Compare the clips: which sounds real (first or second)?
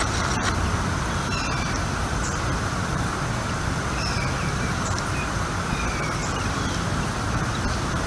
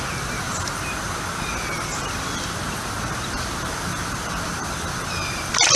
second